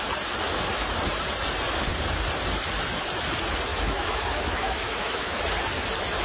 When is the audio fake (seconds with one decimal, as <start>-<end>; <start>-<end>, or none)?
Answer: 3.7-5.4